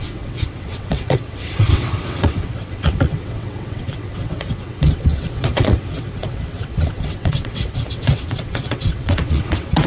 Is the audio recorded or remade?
remade